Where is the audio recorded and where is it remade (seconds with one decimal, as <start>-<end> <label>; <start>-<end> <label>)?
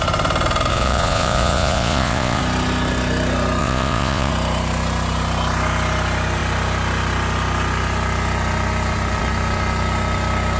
0.0-0.7 recorded; 0.7-2.4 remade; 2.4-3.6 recorded; 3.6-4.3 remade; 4.3-10.6 recorded